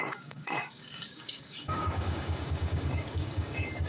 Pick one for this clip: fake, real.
fake